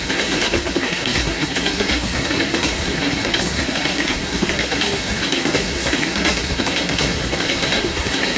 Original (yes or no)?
no